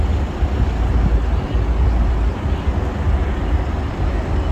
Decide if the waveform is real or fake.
real